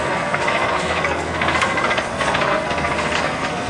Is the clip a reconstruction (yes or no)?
yes